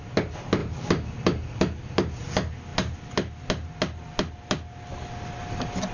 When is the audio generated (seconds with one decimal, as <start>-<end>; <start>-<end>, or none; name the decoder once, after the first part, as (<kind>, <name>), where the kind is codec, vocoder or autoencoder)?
0.6-1.6 (vocoder, BigVGAN v2)